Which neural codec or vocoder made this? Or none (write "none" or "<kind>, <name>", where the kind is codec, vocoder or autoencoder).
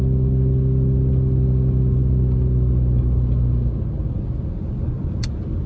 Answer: none